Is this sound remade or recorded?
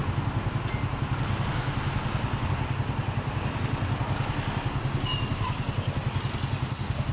recorded